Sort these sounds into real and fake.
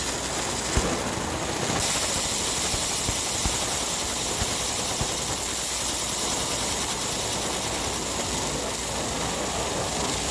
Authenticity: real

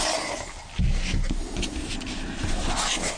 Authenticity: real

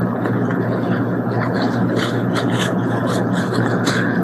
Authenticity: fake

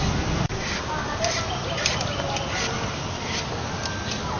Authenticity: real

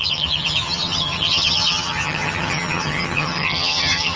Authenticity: fake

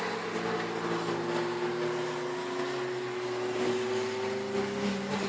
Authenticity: real